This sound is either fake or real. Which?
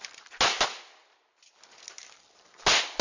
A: real